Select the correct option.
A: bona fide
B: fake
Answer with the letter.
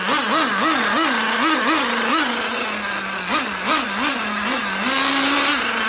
A